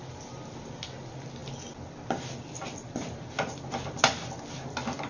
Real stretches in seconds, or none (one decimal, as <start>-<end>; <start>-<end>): 0.0-5.1